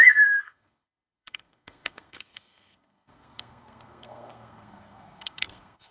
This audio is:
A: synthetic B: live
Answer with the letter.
A